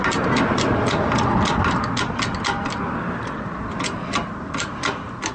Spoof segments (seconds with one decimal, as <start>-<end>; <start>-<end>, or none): none